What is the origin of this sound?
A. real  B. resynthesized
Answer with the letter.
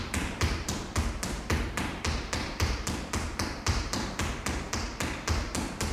B